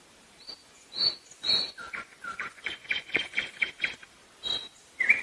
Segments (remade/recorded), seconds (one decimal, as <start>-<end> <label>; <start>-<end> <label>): 0.0-0.6 recorded; 0.6-3.7 remade; 3.7-5.2 recorded